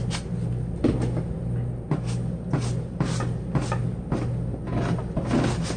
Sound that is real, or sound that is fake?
real